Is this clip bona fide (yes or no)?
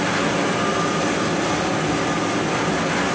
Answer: yes